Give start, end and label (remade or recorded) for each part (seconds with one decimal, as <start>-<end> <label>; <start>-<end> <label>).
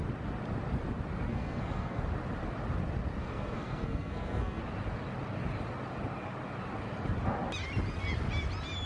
0.0-1.3 recorded; 1.3-2.0 remade; 2.0-3.2 recorded; 3.2-4.6 remade; 4.6-8.9 recorded